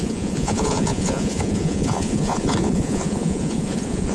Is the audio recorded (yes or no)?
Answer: no